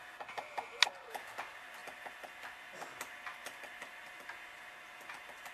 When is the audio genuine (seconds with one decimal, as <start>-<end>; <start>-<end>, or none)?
0.0-5.5